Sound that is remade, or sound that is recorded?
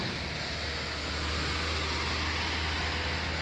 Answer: recorded